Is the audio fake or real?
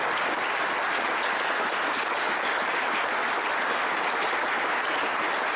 real